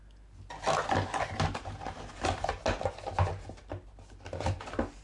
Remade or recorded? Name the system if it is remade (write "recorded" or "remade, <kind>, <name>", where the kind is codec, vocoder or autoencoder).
recorded